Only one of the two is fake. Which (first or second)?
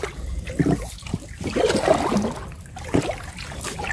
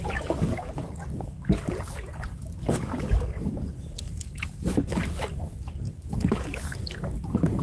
second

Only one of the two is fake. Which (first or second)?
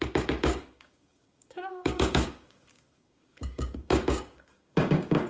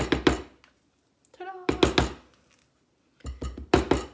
first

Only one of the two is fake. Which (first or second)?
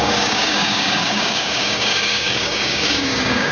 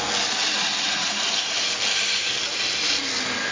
first